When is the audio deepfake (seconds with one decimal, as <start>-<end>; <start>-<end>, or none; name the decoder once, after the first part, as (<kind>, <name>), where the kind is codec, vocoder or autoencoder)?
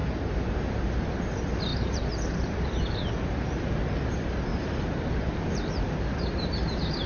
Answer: 0.0-1.0 (vocoder, BigVGAN v2); 1.7-2.7; 4.5-7.1